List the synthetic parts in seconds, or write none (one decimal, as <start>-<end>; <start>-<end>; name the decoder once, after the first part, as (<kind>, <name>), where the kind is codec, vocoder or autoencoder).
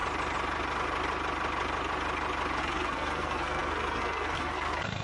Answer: 2.6-5.0 (codec, SNAC)